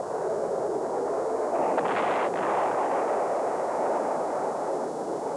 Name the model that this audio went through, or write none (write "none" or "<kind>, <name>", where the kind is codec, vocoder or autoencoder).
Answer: none